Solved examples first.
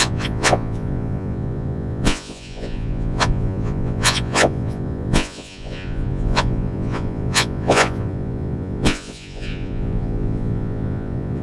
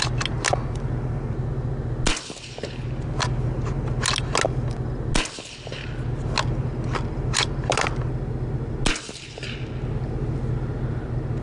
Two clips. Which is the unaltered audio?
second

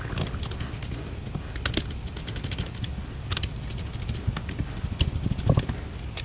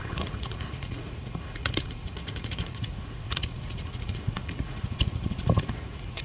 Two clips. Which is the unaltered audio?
first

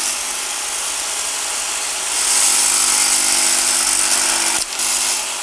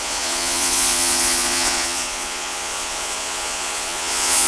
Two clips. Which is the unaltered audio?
first